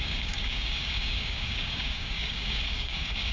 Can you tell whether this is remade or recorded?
remade